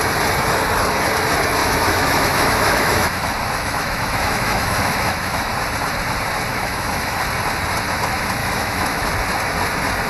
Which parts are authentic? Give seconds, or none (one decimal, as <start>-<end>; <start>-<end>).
0.0-1.6; 5.5-6.5; 7.2-8.4; 9.1-10.1